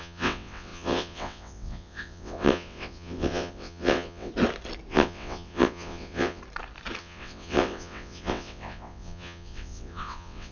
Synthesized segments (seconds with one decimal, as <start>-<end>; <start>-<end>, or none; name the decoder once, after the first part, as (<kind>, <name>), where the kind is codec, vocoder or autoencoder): 0.0-4.3 (vocoder, WaveNeXt); 4.9-6.4; 7.0-10.5